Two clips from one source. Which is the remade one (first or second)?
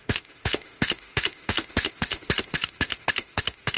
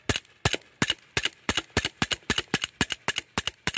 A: first